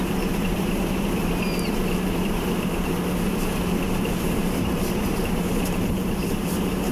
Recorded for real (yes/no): no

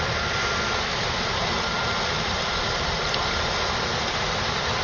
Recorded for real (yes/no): no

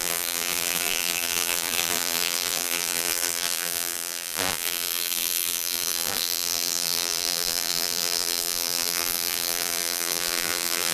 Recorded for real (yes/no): no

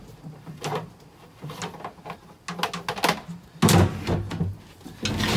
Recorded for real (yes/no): yes